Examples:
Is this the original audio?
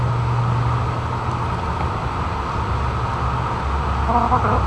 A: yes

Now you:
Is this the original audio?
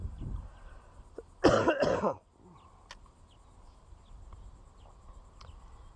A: yes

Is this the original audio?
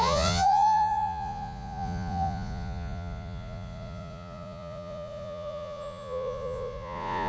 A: no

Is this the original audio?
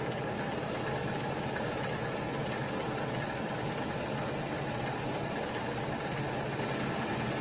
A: yes